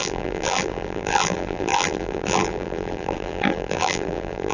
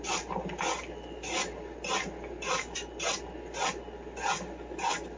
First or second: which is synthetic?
first